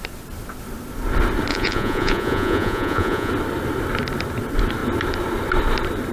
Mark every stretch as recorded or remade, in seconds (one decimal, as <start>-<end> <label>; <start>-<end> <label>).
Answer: 0.0-1.5 recorded; 1.5-3.3 remade; 3.3-6.1 recorded

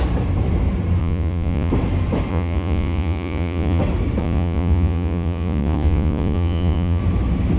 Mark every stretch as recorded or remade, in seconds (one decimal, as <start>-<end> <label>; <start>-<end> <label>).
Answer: 0.0-1.0 recorded; 1.0-1.7 remade; 1.7-2.3 recorded; 2.3-3.8 remade; 3.8-4.2 recorded; 4.2-7.0 remade; 7.0-7.6 recorded